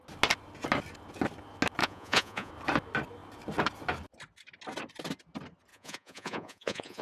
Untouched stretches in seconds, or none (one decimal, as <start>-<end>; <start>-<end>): 0.0-1.8; 2.5-5.7